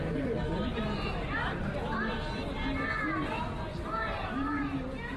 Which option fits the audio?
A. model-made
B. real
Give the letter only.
B